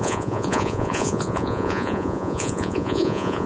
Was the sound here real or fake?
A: fake